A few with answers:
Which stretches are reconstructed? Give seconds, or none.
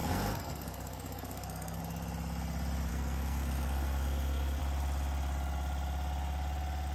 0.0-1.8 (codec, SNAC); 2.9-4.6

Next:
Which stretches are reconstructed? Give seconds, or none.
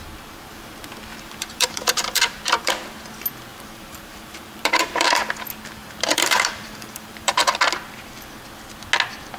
1.1-2.7 (vocoder, BigVGAN v2); 3.5-5.2; 5.8-7.5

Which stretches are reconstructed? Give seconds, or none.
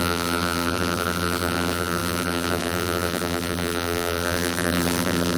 0.0-5.4 (vocoder, BigVGAN v2)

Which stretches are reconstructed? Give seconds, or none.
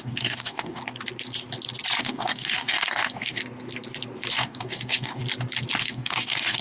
0.0-0.8 (codec, DAC); 2.0-3.4; 4.3-5.2; 5.8-6.6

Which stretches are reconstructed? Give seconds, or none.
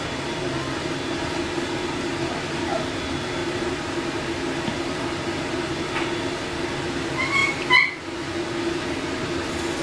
none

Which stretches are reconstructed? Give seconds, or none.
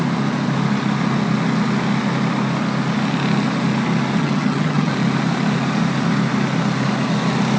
4.2-4.9 (vocoder, HiFi-GAN)